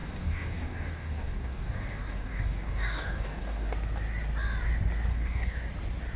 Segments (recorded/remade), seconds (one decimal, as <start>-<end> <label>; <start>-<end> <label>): 0.0-3.7 remade; 3.7-5.1 recorded; 5.1-5.7 remade; 5.7-6.2 recorded